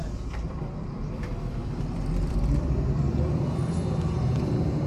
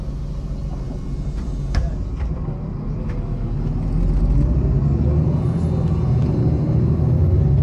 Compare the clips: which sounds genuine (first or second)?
second